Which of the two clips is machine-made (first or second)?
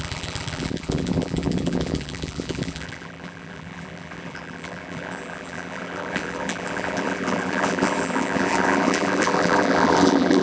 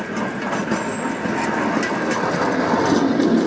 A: first